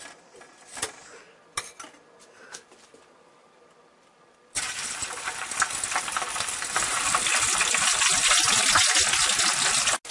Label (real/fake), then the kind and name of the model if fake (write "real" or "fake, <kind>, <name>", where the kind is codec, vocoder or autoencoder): real